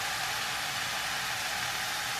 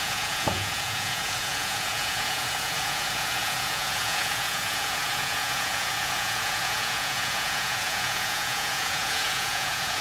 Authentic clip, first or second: first